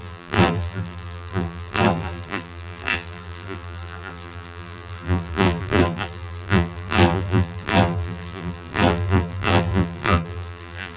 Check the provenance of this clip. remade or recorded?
remade